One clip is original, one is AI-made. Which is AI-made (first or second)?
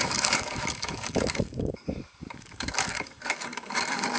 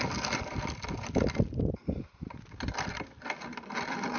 first